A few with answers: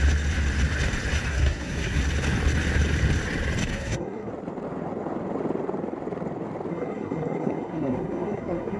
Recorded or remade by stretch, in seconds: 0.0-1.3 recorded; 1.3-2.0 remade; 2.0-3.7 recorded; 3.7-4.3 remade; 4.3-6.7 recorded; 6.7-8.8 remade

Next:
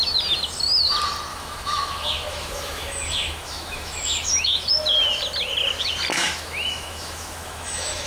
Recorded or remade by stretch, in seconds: 0.0-1.3 recorded; 1.3-4.7 remade; 4.7-6.1 recorded; 6.1-8.1 remade

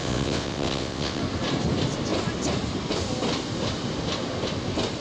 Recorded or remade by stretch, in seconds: 0.0-1.2 remade; 1.2-5.0 recorded

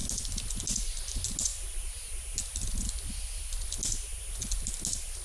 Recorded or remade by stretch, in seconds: 0.0-5.2 recorded

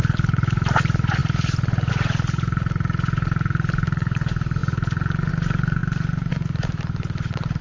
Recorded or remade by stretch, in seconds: 0.0-4.6 remade; 4.6-5.3 recorded; 5.3-7.6 remade

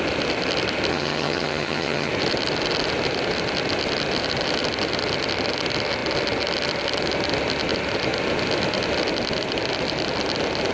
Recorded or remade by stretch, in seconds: 0.0-0.9 recorded; 0.9-2.1 remade; 2.1-10.7 recorded